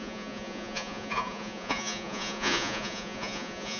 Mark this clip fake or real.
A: fake